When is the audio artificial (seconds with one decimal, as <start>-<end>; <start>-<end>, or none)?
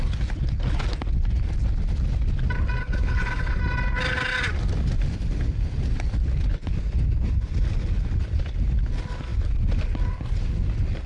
2.8-3.6